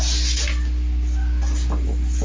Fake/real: real